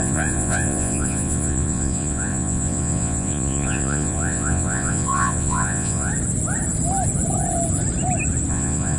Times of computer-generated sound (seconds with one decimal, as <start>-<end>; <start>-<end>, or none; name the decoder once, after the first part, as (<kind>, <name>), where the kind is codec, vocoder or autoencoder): 0.0-6.1 (vocoder, Vocos); 8.5-9.0